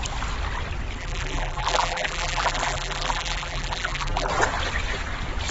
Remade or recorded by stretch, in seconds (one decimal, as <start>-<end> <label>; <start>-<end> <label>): 0.0-1.0 recorded; 1.0-4.3 remade; 4.3-5.5 recorded